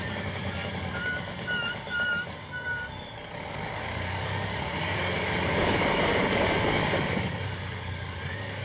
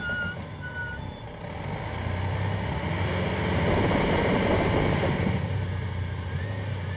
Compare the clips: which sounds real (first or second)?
second